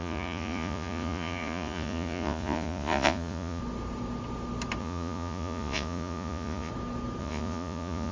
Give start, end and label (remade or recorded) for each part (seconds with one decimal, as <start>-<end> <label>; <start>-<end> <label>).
0.0-3.6 remade; 3.6-4.8 recorded; 4.8-6.7 remade; 6.7-7.2 recorded; 7.2-8.1 remade